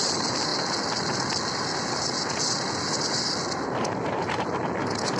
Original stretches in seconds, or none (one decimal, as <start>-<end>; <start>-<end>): 0.5-3.6